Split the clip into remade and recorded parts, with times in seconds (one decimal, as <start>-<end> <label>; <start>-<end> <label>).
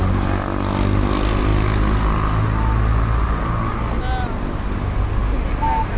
0.0-6.0 recorded